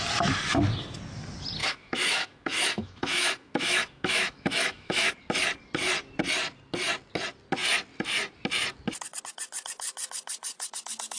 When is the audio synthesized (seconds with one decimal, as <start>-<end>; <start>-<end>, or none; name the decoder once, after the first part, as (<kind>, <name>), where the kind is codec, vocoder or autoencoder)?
1.6-5.1 (autoencoder, DAC-VAE)